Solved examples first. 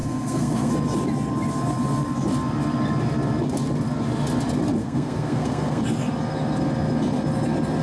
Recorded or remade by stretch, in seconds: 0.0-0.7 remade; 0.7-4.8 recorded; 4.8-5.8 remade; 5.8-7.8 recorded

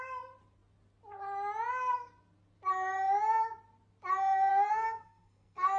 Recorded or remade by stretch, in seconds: 0.0-4.5 recorded; 4.5-5.8 remade